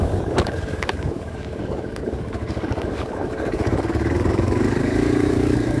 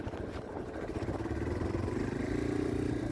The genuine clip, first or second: second